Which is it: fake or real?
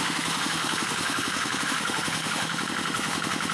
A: fake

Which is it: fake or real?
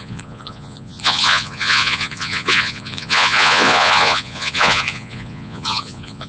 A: fake